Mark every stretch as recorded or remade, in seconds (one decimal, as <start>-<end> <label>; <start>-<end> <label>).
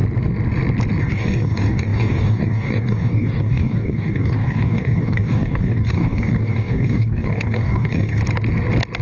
0.0-1.0 recorded; 1.0-8.2 remade; 8.2-9.0 recorded